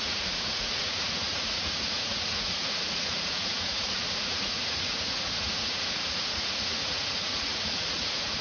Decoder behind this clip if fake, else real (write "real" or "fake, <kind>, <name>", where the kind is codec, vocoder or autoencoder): fake, vocoder, Vocos